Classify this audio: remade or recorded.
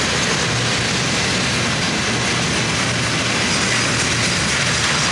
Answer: recorded